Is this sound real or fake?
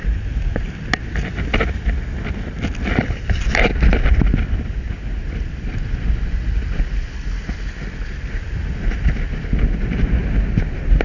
real